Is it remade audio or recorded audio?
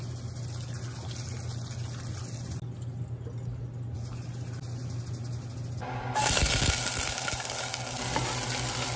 recorded